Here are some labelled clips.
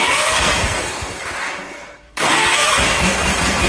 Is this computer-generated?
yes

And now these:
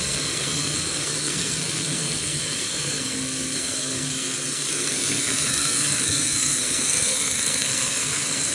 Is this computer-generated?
yes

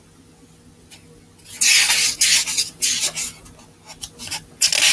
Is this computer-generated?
no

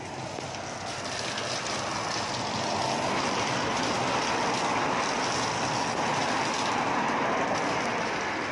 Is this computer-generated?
no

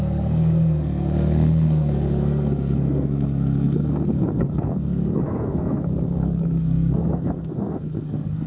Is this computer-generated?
yes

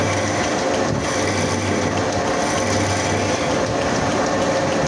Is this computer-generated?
no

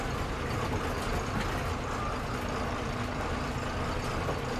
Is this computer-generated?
no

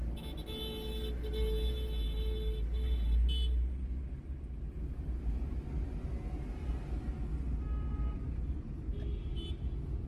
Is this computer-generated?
no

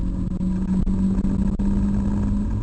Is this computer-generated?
no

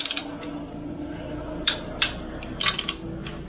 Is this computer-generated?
no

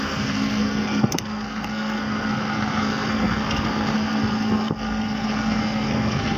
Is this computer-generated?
yes